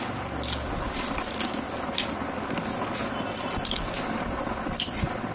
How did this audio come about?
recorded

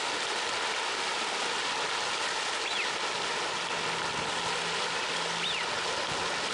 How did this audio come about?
recorded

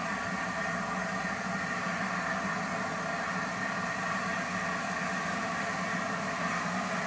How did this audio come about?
recorded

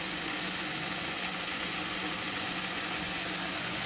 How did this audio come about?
remade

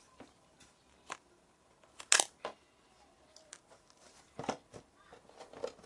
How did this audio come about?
recorded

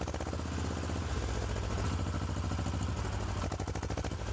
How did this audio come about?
recorded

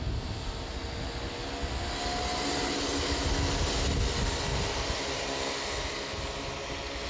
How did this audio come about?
recorded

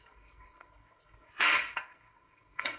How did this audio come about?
remade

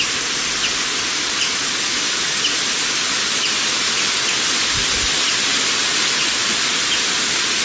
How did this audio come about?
recorded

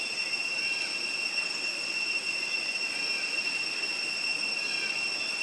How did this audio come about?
recorded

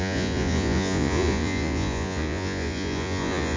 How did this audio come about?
remade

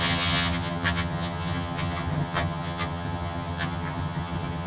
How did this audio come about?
remade